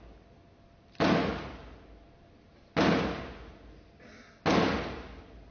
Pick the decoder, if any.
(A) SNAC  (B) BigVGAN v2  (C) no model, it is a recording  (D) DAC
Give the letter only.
C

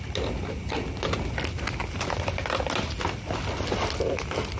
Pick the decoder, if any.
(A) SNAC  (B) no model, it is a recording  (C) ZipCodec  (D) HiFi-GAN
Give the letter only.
B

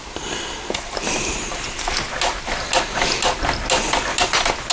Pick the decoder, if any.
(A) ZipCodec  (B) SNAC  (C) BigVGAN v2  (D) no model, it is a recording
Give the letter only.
D